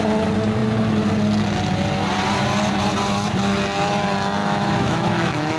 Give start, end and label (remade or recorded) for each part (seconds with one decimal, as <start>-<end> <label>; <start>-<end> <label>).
0.0-4.4 recorded; 4.4-5.6 remade